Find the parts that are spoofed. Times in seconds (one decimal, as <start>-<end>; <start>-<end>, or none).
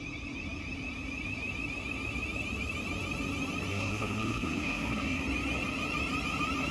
3.7-5.2